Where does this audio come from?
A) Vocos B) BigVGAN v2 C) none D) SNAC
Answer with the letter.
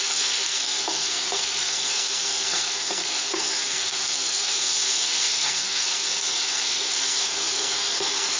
D